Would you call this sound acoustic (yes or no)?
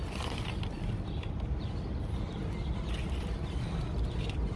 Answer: yes